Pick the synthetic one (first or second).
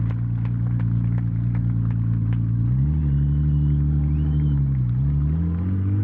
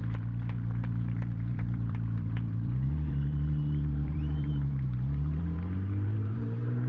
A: second